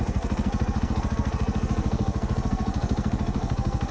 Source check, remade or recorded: remade